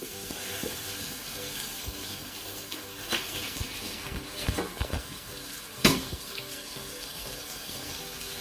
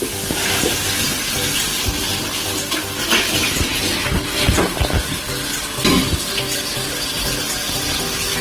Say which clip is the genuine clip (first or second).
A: second